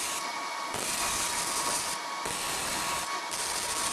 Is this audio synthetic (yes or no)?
no